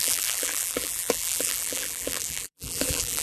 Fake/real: fake